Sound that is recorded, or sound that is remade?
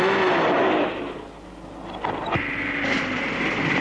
recorded